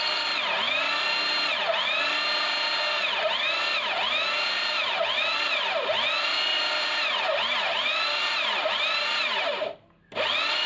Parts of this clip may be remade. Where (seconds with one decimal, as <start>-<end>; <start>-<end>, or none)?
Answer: none